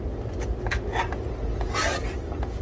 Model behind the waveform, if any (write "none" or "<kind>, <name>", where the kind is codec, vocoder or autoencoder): none